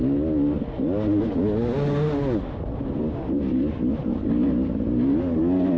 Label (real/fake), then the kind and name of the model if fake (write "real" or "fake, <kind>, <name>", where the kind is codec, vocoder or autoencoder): real